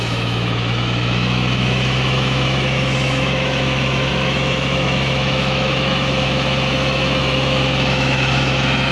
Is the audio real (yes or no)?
no